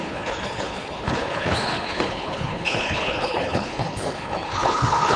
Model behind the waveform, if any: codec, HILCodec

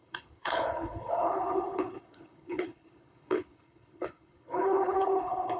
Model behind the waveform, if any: codec, HILCodec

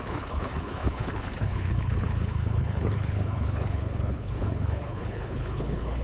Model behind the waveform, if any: codec, HILCodec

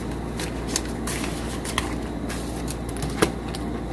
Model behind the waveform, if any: none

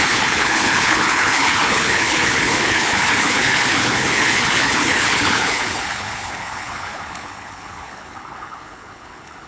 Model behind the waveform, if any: codec, HILCodec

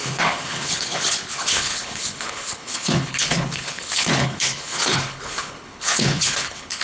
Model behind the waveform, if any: codec, HILCodec